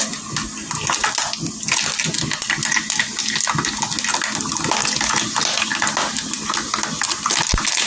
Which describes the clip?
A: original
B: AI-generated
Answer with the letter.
A